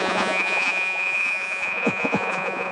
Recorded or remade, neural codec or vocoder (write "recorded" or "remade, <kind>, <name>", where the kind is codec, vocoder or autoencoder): remade, vocoder, Vocos